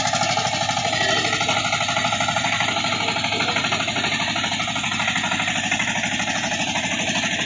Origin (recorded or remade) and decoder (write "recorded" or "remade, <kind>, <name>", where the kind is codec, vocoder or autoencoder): recorded